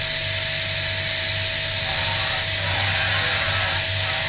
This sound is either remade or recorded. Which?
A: recorded